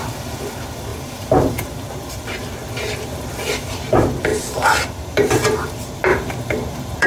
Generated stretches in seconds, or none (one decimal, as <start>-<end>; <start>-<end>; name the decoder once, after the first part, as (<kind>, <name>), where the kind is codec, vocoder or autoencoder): 0.9-1.9 (vocoder, BigVGAN v2); 4.3-5.3; 6.1-7.1